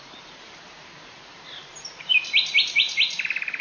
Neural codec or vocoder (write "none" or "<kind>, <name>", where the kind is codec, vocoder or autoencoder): vocoder, BigVGAN v2